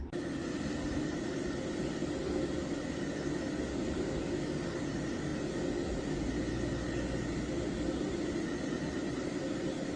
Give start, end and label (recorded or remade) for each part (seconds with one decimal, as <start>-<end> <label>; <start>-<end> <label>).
0.0-10.0 recorded